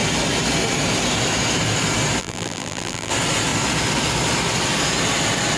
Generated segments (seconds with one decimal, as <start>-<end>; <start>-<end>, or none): 2.2-3.1